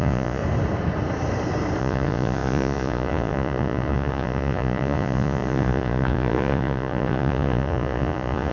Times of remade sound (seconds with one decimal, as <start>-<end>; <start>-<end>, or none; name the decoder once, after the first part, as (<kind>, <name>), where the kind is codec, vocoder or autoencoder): 0.0-0.4 (vocoder, Vocos); 1.8-8.5